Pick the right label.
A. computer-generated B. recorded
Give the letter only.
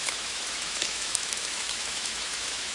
A